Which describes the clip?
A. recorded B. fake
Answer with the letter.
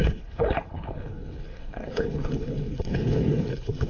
B